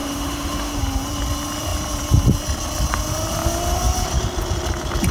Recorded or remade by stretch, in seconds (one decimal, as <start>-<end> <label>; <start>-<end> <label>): 0.0-0.8 remade; 0.8-5.1 recorded

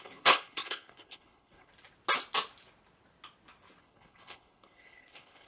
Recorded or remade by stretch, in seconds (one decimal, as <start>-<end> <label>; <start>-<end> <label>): 0.0-1.7 remade; 1.7-3.8 recorded; 3.8-5.5 remade

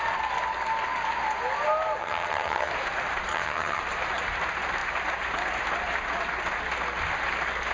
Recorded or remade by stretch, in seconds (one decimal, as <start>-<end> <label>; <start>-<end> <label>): 0.0-2.0 recorded; 2.0-2.7 remade; 2.7-3.3 recorded; 3.3-3.8 remade; 3.8-7.7 recorded

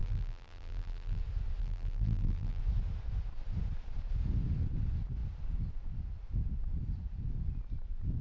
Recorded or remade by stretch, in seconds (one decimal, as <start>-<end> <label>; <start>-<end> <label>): 0.0-1.2 remade; 1.2-1.6 recorded; 1.6-2.6 remade; 2.6-8.2 recorded